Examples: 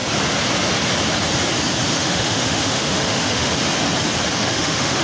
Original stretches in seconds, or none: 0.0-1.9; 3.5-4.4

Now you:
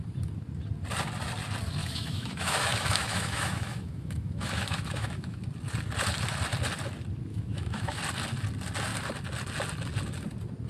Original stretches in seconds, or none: 0.0-1.8; 5.4-7.3; 8.0-10.7

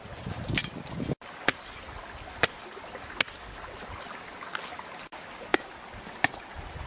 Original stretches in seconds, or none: 0.0-6.9

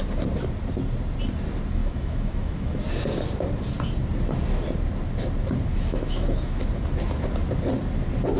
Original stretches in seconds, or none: 0.0-1.8; 2.9-5.7; 6.7-8.4

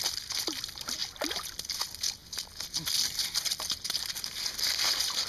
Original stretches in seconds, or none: 0.0-5.3